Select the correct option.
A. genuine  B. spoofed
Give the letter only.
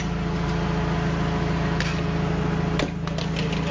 A